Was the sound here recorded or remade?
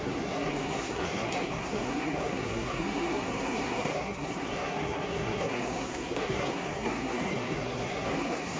remade